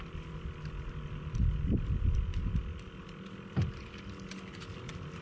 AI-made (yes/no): no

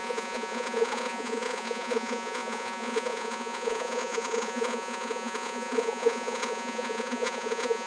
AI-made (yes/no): yes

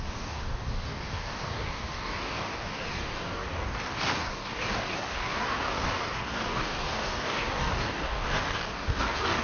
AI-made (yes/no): yes